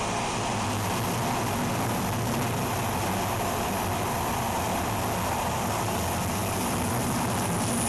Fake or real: real